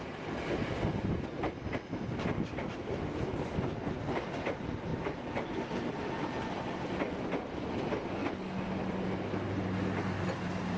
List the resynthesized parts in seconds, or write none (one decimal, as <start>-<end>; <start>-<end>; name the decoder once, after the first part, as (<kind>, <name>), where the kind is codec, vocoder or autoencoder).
none